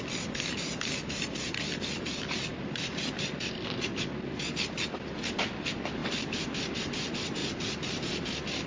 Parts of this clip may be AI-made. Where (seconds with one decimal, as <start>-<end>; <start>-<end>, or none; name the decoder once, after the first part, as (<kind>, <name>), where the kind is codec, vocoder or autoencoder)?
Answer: 0.0-7.4 (vocoder, BigVGAN v2); 8.0-8.7